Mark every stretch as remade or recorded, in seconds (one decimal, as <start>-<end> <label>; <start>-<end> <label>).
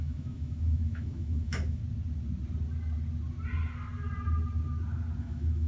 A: 0.0-1.8 remade; 1.8-5.2 recorded; 5.2-5.7 remade